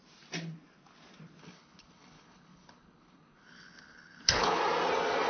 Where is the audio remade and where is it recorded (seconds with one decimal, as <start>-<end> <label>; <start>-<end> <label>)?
0.0-1.4 recorded; 1.4-4.6 remade; 4.6-5.3 recorded